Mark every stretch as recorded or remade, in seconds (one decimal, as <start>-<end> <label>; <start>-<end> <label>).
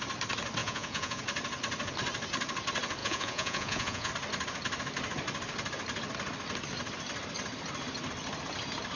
0.0-0.6 recorded; 0.6-1.2 remade; 1.2-3.0 recorded; 3.0-4.1 remade; 4.1-9.0 recorded